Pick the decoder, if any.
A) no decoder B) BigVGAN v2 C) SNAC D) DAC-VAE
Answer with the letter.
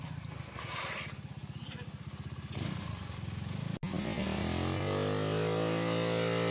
A